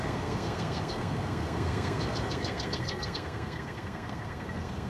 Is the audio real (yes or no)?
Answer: no